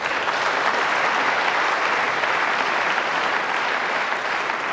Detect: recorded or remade recorded